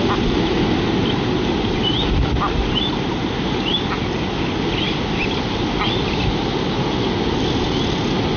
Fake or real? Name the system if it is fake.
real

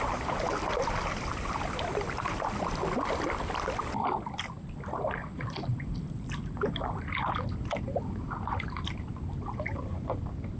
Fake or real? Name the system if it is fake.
real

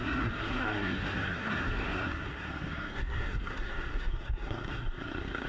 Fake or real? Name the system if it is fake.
fake, codec, SNAC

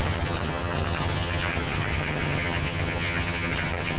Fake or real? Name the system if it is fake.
fake, vocoder, HiFi-GAN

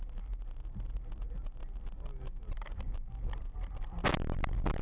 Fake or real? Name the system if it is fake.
real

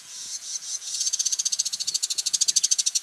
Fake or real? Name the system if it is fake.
fake, vocoder, Vocos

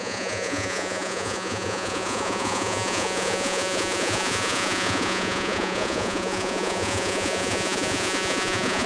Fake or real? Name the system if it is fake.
fake, vocoder, Vocos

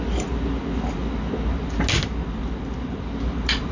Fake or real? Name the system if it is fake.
real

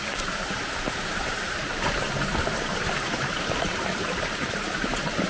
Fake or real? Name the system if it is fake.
fake, vocoder, BigVGAN v2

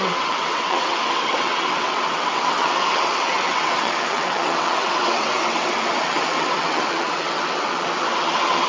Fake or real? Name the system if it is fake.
fake, vocoder, WaveNeXt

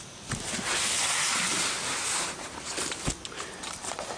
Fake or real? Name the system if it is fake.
real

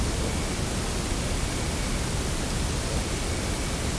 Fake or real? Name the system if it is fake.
real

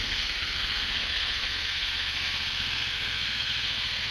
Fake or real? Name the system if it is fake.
fake, codec, SNAC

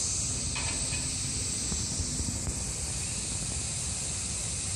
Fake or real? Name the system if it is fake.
real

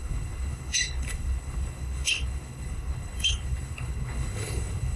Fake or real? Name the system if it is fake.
fake, codec, HILCodec